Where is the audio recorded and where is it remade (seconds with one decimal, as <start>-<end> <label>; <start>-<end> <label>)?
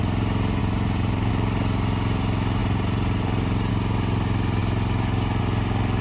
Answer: 0.0-0.6 recorded; 0.6-1.3 remade; 1.3-2.6 recorded; 2.6-3.7 remade; 3.7-6.0 recorded